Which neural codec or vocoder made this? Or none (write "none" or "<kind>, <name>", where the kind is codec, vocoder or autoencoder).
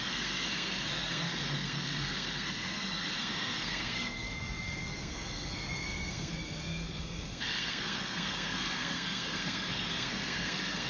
codec, SNAC